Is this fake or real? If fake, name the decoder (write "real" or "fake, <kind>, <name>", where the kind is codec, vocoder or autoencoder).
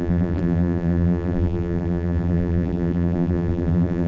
fake, vocoder, BigVGAN v2